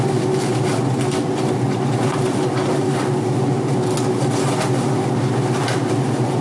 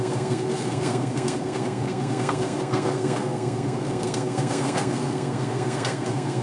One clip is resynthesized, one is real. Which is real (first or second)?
first